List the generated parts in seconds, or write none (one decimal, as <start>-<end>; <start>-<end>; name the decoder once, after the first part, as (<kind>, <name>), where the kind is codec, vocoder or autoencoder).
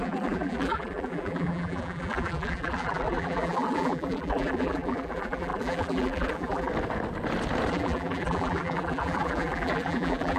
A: 0.0-6.7 (vocoder, BigVGAN v2); 7.7-10.4